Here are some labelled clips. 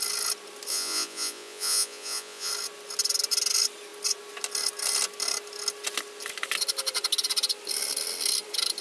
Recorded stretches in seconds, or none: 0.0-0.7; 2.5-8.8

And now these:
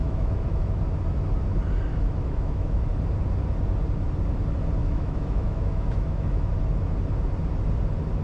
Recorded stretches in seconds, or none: 0.8-1.9; 2.8-4.8; 6.5-8.2

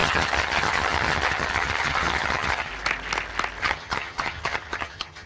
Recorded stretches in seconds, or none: 2.7-3.6

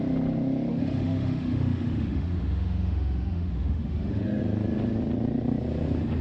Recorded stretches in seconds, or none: 0.0-0.7; 4.4-6.2

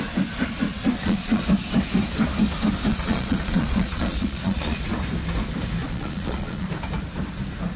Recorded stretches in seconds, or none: 0.0-0.7; 1.4-2.9; 4.8-5.8; 6.7-7.8